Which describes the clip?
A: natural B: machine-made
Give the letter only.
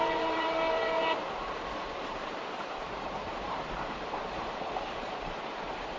B